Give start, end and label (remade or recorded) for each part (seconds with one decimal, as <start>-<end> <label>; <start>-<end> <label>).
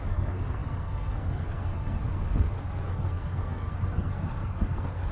0.0-5.1 remade